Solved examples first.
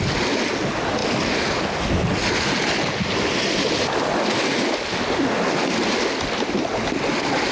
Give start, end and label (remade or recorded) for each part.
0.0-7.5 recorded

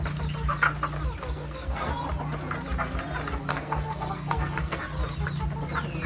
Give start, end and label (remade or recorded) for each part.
0.0-1.2 recorded; 1.2-1.9 remade; 1.9-3.5 recorded; 3.5-4.8 remade; 4.8-6.1 recorded

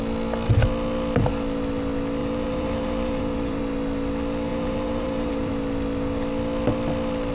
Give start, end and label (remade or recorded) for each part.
0.0-2.2 recorded; 2.2-3.6 remade; 3.6-4.5 recorded; 4.5-5.5 remade; 5.5-7.3 recorded

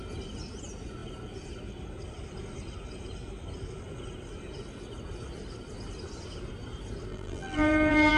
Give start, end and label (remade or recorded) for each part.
0.0-7.1 recorded; 7.1-8.2 remade